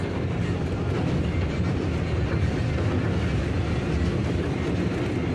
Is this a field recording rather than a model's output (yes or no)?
yes